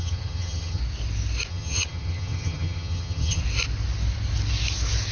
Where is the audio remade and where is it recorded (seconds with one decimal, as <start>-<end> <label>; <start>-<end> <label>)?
0.0-0.8 remade; 0.8-1.5 recorded; 1.5-3.4 remade; 3.4-5.1 recorded